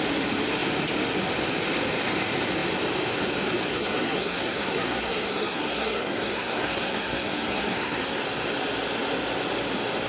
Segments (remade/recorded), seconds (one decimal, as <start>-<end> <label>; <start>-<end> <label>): 0.0-3.7 recorded; 3.7-8.2 remade; 8.2-10.1 recorded